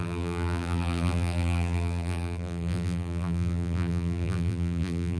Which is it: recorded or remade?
remade